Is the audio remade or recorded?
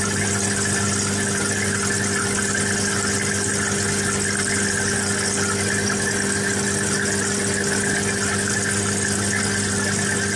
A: recorded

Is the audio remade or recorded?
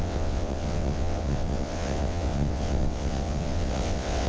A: remade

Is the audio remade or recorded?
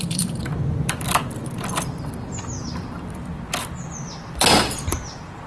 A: remade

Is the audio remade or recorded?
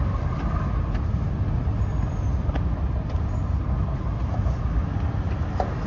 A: recorded